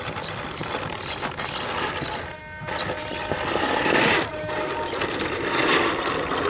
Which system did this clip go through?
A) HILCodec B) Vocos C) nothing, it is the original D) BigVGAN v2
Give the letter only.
C